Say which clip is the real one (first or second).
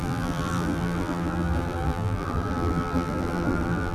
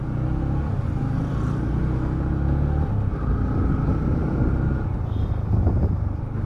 second